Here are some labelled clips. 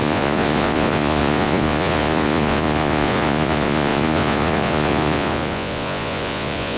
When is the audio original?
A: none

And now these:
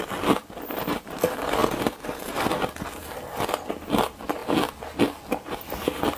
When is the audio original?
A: 0.0-6.2

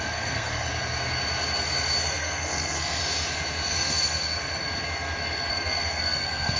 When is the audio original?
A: 0.7-2.0; 3.0-3.7; 4.6-5.5

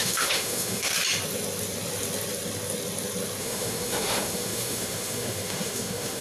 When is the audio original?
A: 0.9-3.4

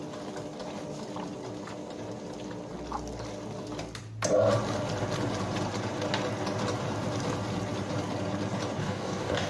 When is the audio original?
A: 0.0-8.8

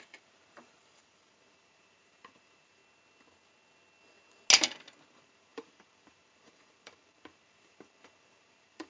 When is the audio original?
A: 2.8-5.1